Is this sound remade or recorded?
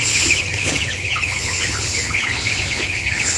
remade